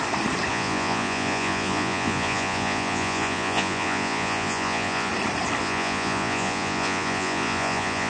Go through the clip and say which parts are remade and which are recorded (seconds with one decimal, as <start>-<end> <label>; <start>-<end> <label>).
0.0-0.5 recorded; 0.5-5.1 remade; 5.1-5.6 recorded; 5.6-8.1 remade